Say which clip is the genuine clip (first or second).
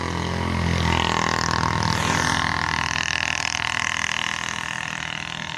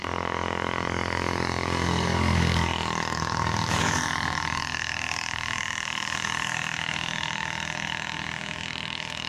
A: first